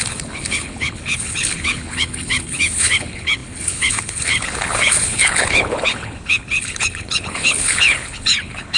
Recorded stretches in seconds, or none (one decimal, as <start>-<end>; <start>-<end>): none